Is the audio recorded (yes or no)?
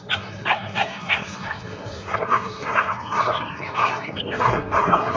no